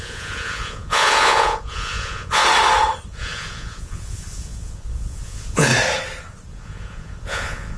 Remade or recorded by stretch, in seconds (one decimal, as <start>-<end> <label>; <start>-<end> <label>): 0.0-2.4 remade; 2.4-3.1 recorded; 3.1-5.7 remade; 5.7-6.5 recorded; 6.5-7.8 remade